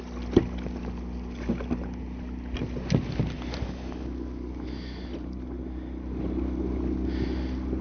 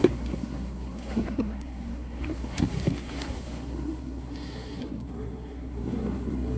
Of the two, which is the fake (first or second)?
second